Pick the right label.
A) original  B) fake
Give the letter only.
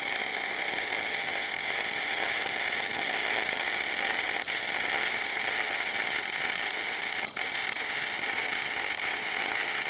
B